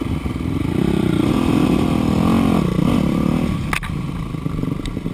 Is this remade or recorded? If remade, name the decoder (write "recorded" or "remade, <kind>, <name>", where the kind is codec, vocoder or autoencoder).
recorded